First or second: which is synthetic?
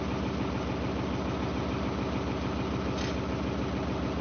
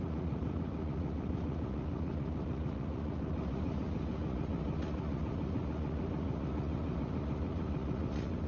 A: second